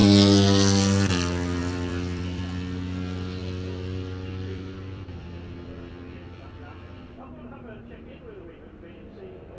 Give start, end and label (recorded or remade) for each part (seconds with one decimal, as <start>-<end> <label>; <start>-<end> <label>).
0.0-1.6 recorded; 1.6-2.4 remade; 2.4-3.4 recorded; 3.4-5.9 remade; 5.9-9.6 recorded